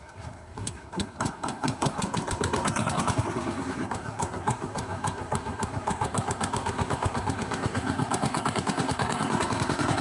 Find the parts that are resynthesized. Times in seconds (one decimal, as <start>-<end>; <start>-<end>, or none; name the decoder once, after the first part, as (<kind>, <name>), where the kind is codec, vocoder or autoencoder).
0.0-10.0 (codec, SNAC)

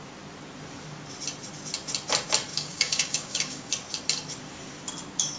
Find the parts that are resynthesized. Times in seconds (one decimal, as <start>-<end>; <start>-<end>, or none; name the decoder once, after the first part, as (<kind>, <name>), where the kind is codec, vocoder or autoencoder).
2.5-3.7 (codec, DAC)

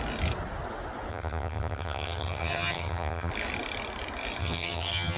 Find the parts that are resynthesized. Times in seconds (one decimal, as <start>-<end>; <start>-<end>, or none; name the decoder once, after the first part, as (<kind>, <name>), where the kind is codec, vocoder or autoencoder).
1.1-3.3 (vocoder, HiFi-GAN); 4.4-5.2

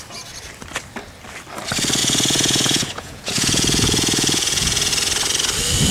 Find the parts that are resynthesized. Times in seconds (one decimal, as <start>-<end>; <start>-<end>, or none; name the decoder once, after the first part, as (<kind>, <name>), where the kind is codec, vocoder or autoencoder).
2.0-4.9 (vocoder, Vocos)

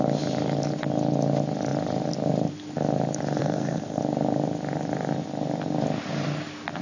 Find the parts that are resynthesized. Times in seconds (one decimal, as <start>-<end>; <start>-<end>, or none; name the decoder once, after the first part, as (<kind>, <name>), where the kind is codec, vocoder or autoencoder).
3.4-4.0 (codec, SNAC)

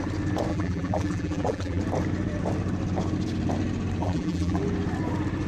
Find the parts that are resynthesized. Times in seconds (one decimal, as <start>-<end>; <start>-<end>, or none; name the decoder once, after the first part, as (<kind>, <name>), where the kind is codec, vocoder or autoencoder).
0.5-1.8 (vocoder, BigVGAN v2); 4.0-4.6

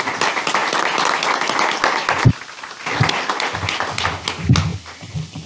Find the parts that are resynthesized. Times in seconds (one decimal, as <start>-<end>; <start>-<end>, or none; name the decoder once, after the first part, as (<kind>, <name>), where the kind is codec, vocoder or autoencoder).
none

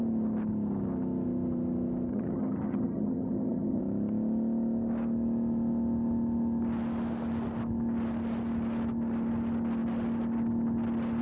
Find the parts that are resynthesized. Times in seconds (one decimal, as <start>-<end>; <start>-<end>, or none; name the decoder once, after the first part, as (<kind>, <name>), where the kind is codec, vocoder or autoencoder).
2.1-3.8 (vocoder, HiFi-GAN)